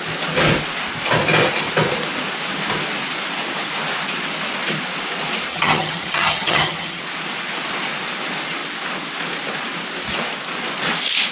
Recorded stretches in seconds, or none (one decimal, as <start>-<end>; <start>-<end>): 0.0-5.5; 7.0-11.3